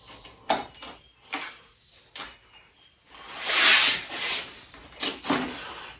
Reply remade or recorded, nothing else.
recorded